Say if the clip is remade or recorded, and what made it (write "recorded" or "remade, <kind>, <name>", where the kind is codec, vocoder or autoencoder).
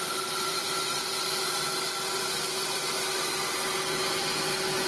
recorded